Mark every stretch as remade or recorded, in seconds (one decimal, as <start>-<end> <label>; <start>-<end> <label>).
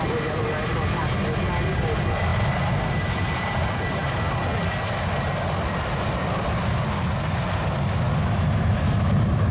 0.0-9.5 recorded